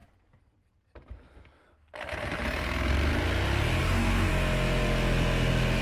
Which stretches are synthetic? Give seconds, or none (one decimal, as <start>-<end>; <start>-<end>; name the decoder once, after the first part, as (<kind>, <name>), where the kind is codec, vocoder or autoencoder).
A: 3.8-4.3 (codec, DAC)